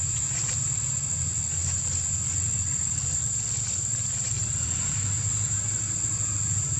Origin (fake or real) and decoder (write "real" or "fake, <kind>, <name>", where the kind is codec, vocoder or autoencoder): real